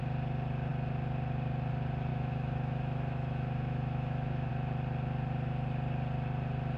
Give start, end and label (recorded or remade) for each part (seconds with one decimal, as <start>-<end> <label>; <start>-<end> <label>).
0.0-2.1 recorded; 2.1-4.5 remade; 4.5-6.8 recorded